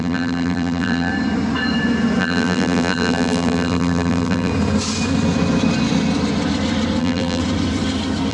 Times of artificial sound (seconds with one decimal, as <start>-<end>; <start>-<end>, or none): 0.0-1.1; 2.2-4.5; 7.0-7.4